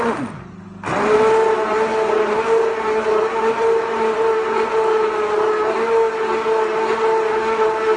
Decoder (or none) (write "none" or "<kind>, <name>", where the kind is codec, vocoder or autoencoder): none